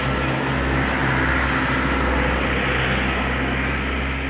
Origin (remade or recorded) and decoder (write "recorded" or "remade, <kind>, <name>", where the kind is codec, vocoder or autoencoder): recorded